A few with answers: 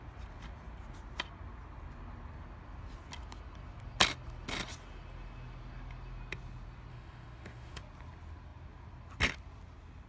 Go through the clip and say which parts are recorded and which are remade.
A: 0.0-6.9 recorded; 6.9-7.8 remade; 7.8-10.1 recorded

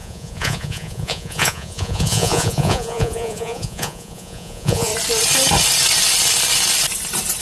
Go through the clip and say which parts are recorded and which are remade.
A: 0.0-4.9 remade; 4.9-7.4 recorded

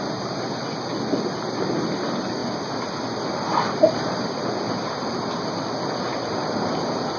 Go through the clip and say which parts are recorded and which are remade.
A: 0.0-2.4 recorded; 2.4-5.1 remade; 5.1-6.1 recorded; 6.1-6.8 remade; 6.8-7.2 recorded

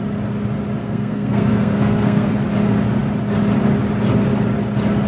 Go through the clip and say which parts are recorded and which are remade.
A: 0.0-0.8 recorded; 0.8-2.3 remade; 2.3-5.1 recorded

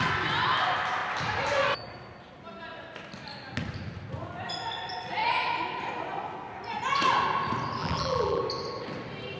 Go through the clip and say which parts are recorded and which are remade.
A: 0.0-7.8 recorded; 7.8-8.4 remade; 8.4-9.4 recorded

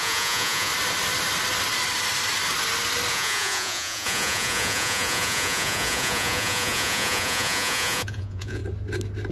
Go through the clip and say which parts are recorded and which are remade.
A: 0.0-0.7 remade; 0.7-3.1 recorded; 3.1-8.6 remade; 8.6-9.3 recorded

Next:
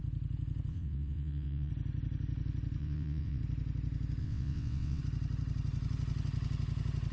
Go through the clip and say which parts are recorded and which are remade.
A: 0.0-0.7 recorded; 0.7-1.7 remade; 1.7-2.8 recorded; 2.8-3.4 remade; 3.4-4.2 recorded; 4.2-5.0 remade; 5.0-7.1 recorded